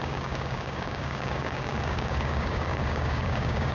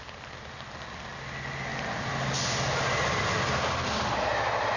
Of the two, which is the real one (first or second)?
second